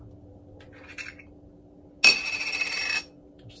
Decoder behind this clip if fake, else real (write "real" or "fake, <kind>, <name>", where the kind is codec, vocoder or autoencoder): real